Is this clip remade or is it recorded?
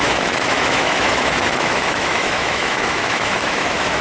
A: remade